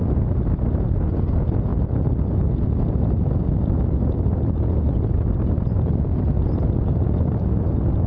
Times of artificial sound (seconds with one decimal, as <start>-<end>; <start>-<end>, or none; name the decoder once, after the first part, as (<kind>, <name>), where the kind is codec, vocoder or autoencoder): none